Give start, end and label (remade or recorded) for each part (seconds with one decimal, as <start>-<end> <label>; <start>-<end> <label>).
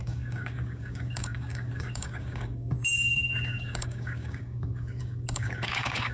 0.0-6.1 remade